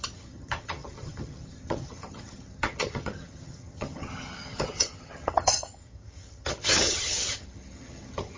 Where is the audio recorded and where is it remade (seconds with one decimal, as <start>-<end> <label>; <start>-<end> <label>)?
0.0-8.4 remade